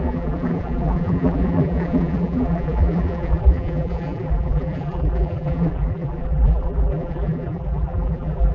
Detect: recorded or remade remade